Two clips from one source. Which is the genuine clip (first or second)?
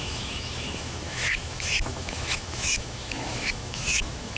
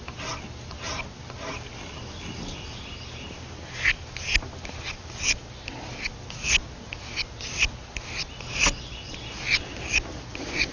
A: second